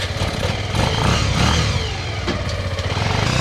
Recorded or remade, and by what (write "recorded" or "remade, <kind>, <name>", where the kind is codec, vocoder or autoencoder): recorded